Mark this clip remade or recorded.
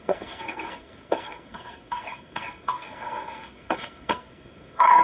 remade